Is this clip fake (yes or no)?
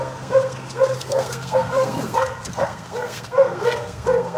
yes